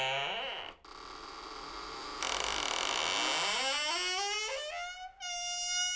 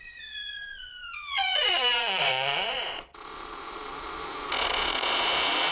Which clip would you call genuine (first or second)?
first